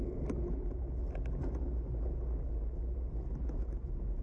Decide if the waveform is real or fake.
real